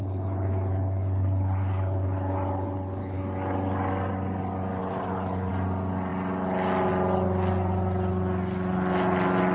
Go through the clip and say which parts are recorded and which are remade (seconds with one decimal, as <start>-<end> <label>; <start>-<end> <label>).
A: 0.0-3.2 remade; 3.2-4.8 recorded; 4.8-5.5 remade; 5.5-9.5 recorded